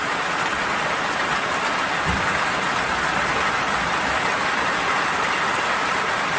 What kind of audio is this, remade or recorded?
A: remade